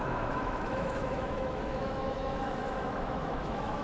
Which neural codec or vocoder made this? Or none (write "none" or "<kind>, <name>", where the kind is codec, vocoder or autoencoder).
autoencoder, DAC-VAE